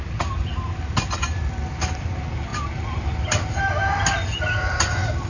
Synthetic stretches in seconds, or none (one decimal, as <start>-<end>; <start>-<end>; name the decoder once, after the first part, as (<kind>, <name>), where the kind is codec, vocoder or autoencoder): none